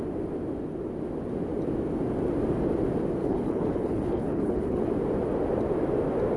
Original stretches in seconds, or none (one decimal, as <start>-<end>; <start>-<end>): 0.0-3.2; 4.9-6.4